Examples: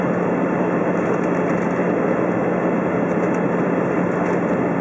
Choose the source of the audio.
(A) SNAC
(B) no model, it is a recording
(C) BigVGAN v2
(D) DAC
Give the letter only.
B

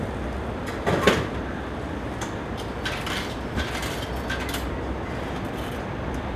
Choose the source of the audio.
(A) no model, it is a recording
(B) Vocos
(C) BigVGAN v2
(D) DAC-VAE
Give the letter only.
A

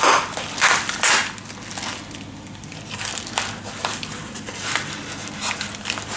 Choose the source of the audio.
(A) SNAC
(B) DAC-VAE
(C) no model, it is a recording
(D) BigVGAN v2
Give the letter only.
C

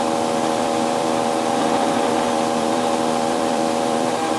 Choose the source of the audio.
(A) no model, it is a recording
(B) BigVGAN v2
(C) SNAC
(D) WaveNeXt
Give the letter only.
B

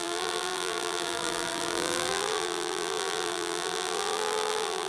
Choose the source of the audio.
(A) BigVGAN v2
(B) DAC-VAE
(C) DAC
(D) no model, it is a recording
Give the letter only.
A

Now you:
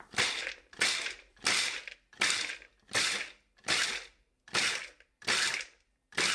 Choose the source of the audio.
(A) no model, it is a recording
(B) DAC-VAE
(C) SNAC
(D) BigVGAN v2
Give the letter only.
D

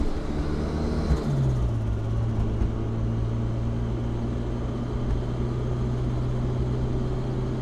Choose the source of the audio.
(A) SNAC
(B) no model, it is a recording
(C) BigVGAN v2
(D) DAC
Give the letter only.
B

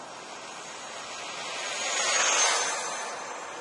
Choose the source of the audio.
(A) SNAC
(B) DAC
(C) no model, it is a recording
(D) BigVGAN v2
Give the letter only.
C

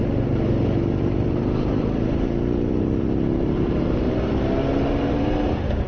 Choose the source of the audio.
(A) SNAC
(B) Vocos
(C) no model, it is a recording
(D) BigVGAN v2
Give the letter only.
D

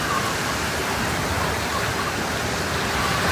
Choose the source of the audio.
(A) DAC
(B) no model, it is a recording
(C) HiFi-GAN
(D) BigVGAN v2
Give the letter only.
B